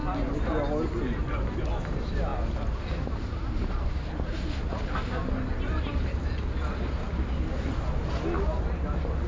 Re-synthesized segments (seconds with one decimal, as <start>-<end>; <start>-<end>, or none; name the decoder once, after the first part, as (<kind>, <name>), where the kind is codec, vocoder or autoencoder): none